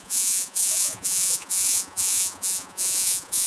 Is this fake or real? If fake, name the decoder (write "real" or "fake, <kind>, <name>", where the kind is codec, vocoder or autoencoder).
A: fake, vocoder, Vocos